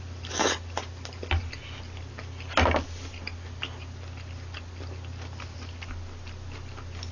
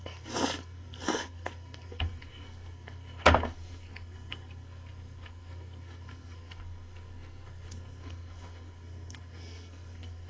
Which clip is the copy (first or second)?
second